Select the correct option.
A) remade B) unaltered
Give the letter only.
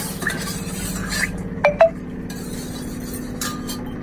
B